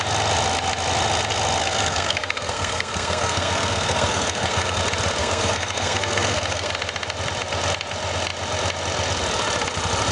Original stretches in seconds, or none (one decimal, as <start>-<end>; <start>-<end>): 0.0-1.6; 4.8-5.2; 6.7-10.1